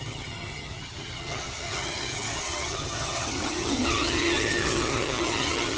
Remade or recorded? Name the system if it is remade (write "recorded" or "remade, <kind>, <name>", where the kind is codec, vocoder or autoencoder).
remade, vocoder, HiFi-GAN